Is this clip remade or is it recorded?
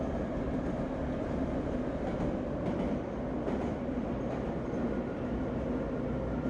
recorded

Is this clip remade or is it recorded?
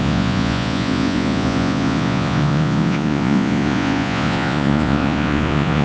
remade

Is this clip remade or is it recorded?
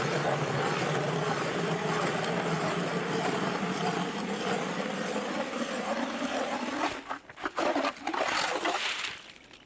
recorded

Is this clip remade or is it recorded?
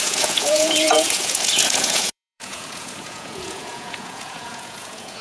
remade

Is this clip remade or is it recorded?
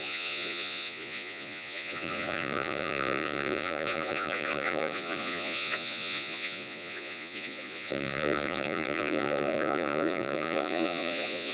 remade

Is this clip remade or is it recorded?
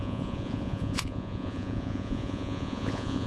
remade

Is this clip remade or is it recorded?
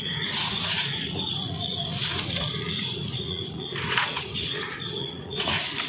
remade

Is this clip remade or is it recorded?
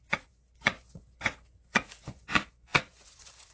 remade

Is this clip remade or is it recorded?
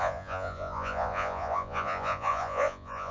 remade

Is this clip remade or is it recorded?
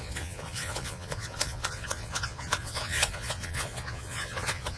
remade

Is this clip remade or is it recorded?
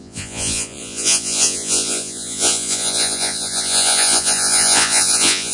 remade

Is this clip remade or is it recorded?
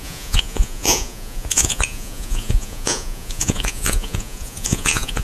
remade